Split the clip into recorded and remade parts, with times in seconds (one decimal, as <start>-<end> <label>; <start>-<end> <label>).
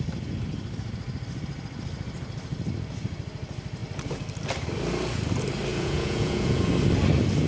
0.0-5.7 recorded; 5.7-6.7 remade; 6.7-7.5 recorded